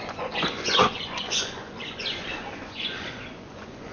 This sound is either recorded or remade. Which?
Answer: remade